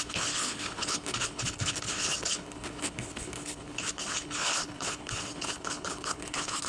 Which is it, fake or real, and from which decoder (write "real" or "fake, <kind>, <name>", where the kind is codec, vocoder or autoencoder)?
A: fake, codec, HILCodec